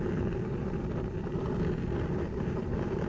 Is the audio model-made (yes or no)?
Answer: no